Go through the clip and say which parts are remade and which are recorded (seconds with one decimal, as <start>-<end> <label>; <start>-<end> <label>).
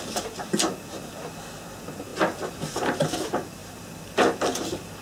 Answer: 0.0-2.1 recorded; 2.1-3.1 remade; 3.1-3.6 recorded; 3.6-5.0 remade